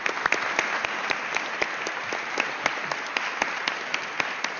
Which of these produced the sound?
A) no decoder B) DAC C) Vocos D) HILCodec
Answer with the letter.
A